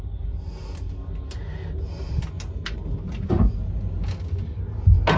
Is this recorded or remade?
recorded